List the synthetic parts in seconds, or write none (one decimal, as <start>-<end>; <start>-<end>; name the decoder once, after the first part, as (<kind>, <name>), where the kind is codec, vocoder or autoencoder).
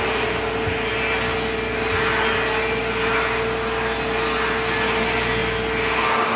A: none